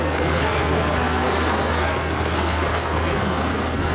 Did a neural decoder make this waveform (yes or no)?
yes